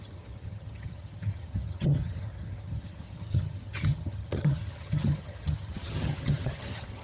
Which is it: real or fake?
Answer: fake